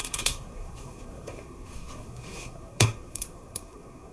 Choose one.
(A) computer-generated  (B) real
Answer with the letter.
A